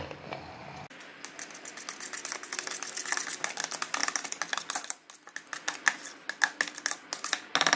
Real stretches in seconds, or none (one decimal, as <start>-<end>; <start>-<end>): 0.0-7.8

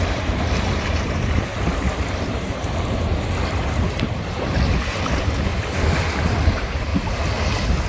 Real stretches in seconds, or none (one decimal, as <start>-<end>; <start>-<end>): 1.5-2.1; 3.1-4.5; 5.5-6.5; 6.9-7.9

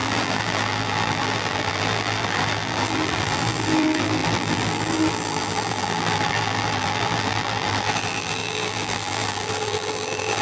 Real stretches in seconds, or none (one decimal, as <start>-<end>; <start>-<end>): none

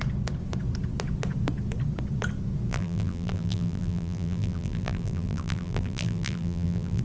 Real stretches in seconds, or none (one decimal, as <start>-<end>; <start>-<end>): 0.0-2.7

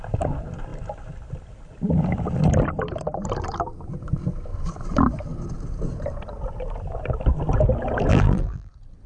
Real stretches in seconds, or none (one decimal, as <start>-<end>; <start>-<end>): 0.0-8.1; 8.7-9.1

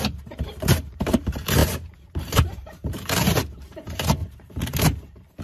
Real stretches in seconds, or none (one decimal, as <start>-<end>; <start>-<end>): 1.6-2.3

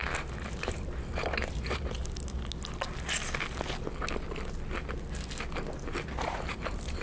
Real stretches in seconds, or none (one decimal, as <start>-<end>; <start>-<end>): 2.0-6.2

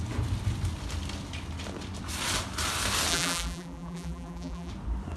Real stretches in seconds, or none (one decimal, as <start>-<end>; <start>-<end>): 0.0-3.1; 4.7-5.2